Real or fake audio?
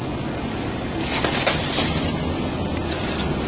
real